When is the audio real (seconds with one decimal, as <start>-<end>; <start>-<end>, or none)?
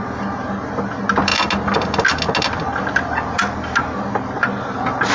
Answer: 0.0-5.1